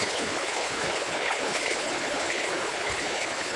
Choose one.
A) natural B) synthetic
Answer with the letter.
B